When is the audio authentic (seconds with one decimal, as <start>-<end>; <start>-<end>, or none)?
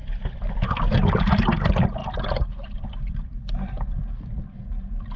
1.2-2.0; 4.0-5.2